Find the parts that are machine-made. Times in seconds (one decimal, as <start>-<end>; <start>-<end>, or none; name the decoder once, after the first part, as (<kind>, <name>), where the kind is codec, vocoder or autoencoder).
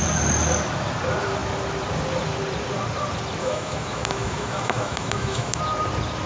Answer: 3.4-5.6 (autoencoder, DAC-VAE)